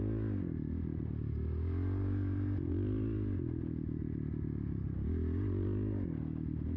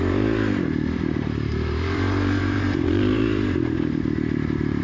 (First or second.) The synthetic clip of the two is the second